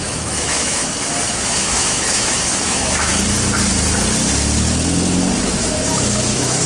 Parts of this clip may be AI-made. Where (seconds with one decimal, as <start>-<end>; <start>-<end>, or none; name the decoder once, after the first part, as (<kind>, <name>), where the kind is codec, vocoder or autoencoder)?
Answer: 0.0-0.8 (autoencoder, DAC-VAE); 1.3-3.1; 5.5-6.7